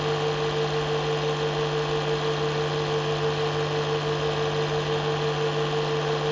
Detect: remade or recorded recorded